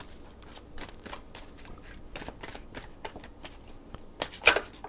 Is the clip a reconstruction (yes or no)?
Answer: no